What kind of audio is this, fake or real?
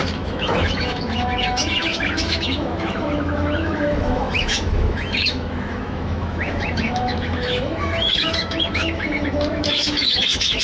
fake